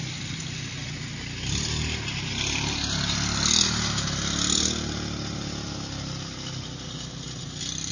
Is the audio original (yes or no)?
yes